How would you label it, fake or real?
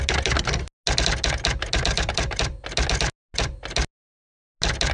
real